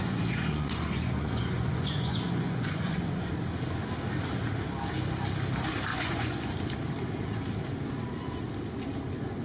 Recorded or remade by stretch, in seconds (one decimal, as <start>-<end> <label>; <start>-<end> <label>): 0.0-3.3 remade; 3.3-5.9 recorded; 5.9-6.5 remade; 6.5-9.4 recorded